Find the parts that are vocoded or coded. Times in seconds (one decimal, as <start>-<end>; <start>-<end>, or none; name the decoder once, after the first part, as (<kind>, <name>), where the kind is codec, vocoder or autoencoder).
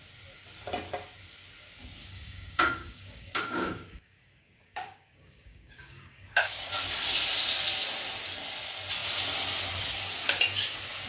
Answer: 2.0-6.7 (codec, DAC)